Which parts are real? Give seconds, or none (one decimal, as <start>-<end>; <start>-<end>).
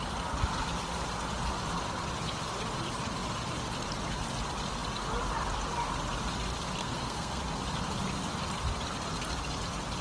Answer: 0.0-6.8; 7.4-10.0